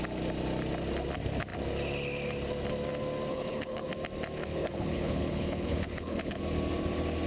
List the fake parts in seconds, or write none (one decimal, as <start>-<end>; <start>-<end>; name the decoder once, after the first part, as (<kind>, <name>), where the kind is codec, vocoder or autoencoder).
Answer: 3.3-3.9 (codec, HILCodec); 4.4-6.4